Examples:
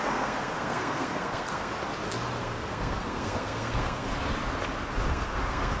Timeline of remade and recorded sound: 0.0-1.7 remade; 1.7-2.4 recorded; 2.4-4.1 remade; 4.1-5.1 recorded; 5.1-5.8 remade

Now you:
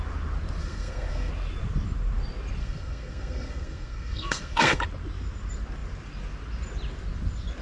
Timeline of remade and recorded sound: 0.0-0.6 recorded; 0.6-1.3 remade; 1.3-2.6 recorded; 2.6-4.8 remade; 4.8-7.6 recorded

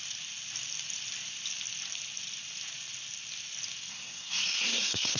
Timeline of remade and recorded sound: 0.0-3.9 recorded; 3.9-5.2 remade

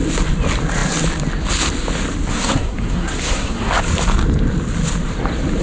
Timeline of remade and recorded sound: 0.0-2.3 recorded; 2.3-3.7 remade; 3.7-5.6 recorded

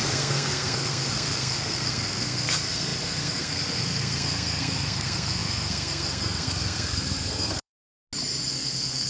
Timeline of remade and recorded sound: 0.0-7.9 remade; 7.9-8.5 recorded; 8.5-9.1 remade